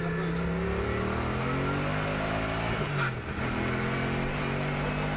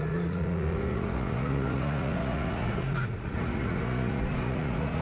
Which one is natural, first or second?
first